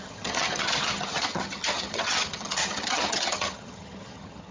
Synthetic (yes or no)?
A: yes